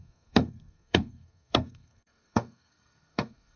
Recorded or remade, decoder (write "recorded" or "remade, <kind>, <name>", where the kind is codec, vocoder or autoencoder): remade, codec, SNAC